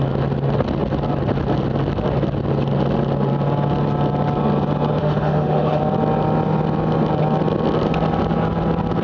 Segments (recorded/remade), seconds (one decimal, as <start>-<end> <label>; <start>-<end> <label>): 0.0-5.0 recorded; 5.0-5.8 remade; 5.8-9.0 recorded

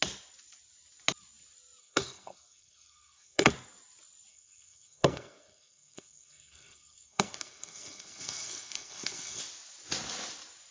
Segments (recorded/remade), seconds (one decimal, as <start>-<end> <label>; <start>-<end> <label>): 0.0-1.8 recorded; 1.8-3.5 remade; 3.5-4.3 recorded; 4.3-9.4 remade; 9.4-10.7 recorded